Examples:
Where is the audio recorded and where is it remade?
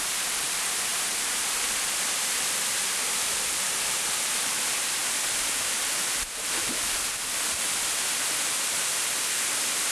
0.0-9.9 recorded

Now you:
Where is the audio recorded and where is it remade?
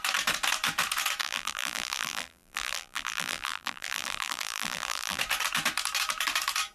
0.0-1.2 recorded; 1.2-5.2 remade; 5.2-6.7 recorded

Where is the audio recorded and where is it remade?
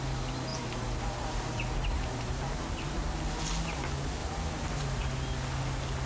0.0-0.5 recorded; 0.5-3.1 remade; 3.1-4.2 recorded; 4.2-5.0 remade; 5.0-6.1 recorded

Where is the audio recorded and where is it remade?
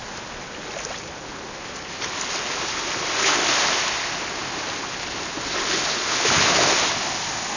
0.0-7.6 recorded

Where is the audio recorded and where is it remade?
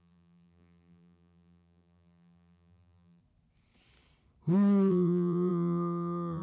0.0-3.2 remade; 3.2-4.9 recorded; 4.9-6.4 remade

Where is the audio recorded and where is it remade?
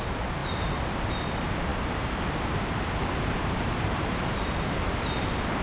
0.0-1.7 recorded; 1.7-5.1 remade; 5.1-5.6 recorded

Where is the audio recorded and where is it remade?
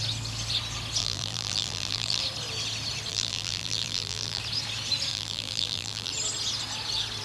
0.0-1.0 recorded; 1.0-2.2 remade; 2.2-3.1 recorded; 3.1-4.4 remade; 4.4-5.1 recorded; 5.1-6.1 remade; 6.1-7.2 recorded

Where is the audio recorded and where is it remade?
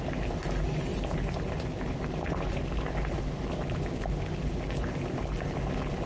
0.0-0.9 recorded; 0.9-2.6 remade; 2.6-6.1 recorded